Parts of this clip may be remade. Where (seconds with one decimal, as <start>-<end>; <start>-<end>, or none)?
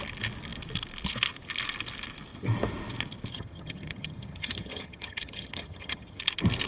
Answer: 3.3-6.2